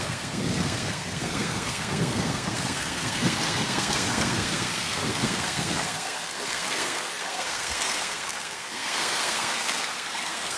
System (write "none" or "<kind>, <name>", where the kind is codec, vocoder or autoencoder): codec, SNAC